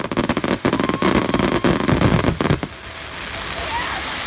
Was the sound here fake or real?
real